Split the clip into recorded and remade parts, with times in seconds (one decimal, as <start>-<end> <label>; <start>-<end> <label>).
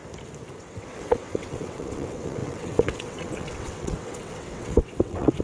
0.0-0.6 recorded; 0.6-5.4 remade